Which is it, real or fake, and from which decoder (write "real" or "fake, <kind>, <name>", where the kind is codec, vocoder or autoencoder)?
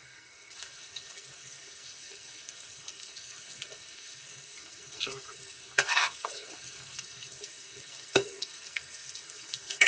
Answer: fake, codec, SNAC